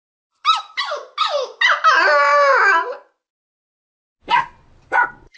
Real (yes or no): yes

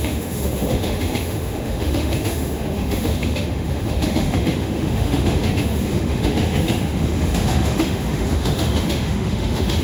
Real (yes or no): no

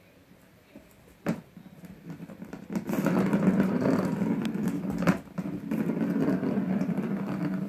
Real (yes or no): yes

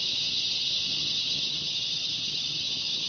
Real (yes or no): no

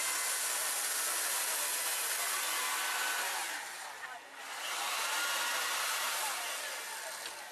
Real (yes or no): yes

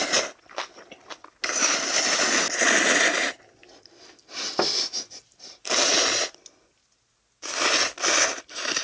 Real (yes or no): yes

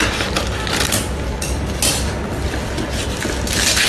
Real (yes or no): yes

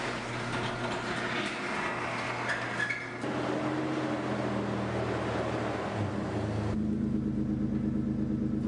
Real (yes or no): yes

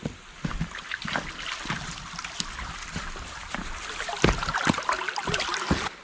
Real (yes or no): yes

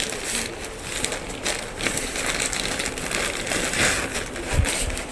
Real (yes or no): yes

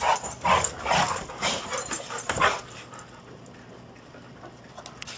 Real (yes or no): yes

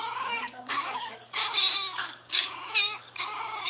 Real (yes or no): no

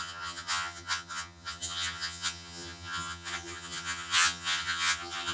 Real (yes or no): no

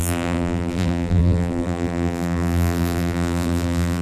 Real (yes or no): no